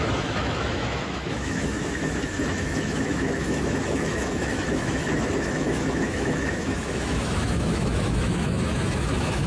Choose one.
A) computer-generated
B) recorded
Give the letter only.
A